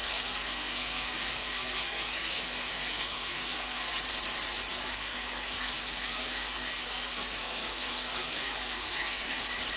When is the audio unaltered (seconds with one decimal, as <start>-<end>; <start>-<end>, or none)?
4.0-4.7; 9.4-9.8